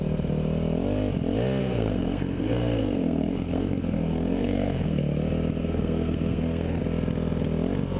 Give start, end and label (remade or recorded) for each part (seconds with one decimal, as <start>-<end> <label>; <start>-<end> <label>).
0.0-1.6 recorded; 1.6-5.0 remade; 5.0-5.6 recorded; 5.6-6.8 remade; 6.8-8.0 recorded